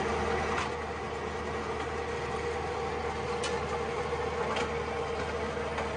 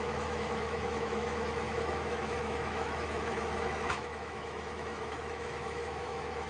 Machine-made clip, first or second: second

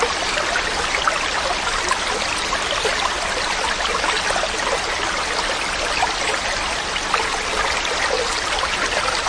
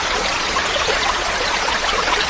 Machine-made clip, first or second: second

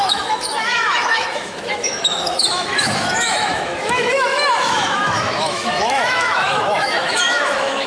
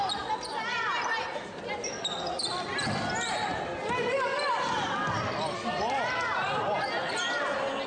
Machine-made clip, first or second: first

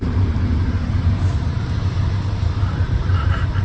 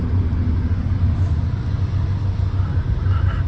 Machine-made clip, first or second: first